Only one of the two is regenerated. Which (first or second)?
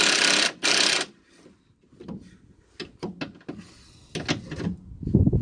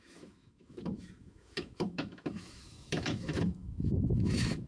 second